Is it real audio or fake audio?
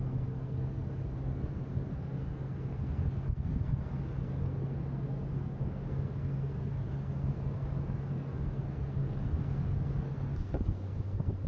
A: fake